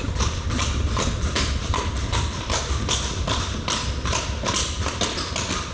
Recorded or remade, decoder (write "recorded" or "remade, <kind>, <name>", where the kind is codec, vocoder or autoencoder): recorded